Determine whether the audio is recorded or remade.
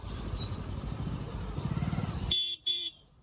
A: remade